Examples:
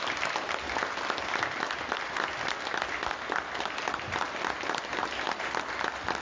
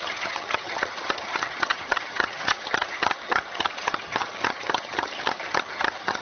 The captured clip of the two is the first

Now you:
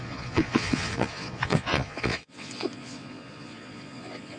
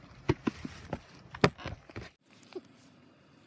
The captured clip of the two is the second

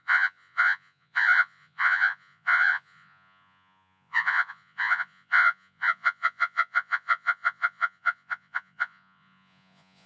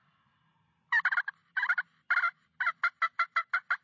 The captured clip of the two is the second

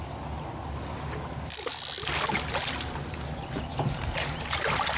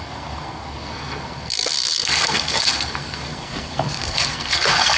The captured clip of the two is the first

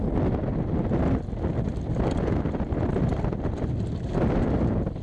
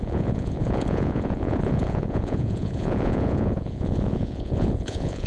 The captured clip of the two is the first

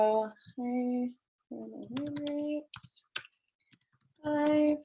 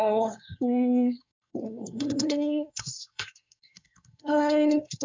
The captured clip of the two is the first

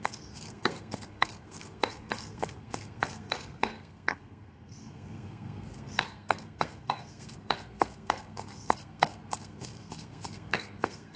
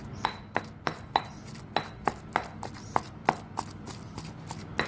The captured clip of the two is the second